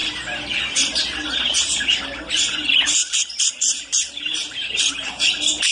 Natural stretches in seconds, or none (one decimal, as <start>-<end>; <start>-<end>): 0.0-2.3